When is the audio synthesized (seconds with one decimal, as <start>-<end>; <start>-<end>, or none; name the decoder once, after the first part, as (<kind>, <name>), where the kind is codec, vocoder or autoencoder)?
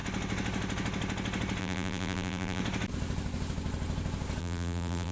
1.6-2.6 (vocoder, BigVGAN v2); 4.4-5.1